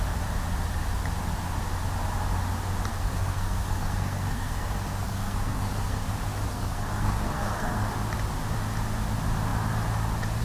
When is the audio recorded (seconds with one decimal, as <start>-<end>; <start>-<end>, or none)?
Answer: 0.0-2.9; 6.1-6.5; 7.9-10.4